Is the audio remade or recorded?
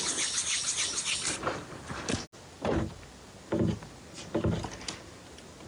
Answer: recorded